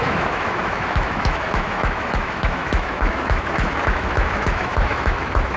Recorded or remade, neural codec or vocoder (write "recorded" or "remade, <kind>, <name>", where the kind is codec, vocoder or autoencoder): remade, autoencoder, DAC-VAE